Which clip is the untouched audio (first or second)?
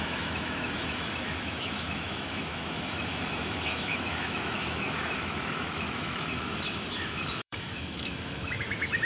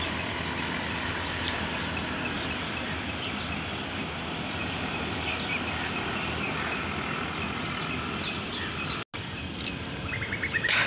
second